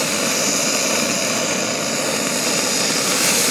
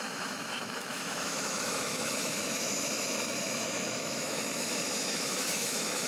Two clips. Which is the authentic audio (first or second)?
first